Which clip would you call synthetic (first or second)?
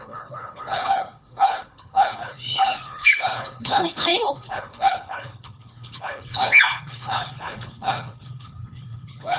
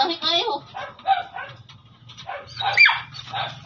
first